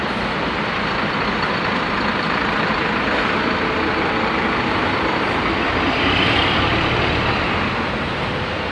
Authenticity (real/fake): real